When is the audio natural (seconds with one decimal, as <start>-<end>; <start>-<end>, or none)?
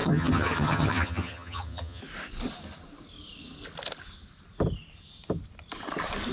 2.0-6.3